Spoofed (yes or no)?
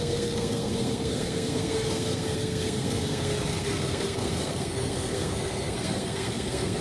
yes